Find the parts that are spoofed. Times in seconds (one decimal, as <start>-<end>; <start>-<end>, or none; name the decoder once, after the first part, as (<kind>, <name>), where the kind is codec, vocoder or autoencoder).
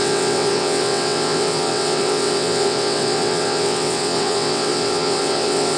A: 0.0-5.8 (vocoder, WaveNeXt)